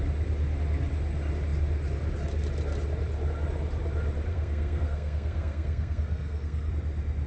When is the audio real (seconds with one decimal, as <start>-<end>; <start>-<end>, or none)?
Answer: 0.0-4.3; 6.7-7.3